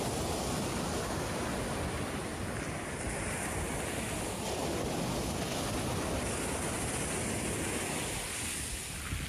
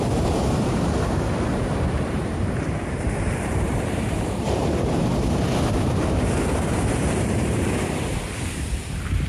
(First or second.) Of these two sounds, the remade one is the second